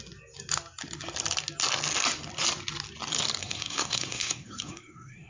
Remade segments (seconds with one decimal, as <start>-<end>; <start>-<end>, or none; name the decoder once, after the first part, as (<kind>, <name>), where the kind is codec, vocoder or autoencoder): 3.4-5.3 (codec, SNAC)